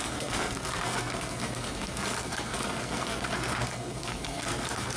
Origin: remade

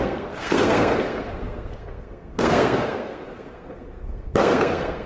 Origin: remade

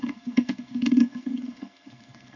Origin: remade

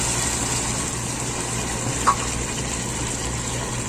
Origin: recorded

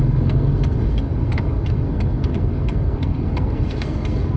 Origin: remade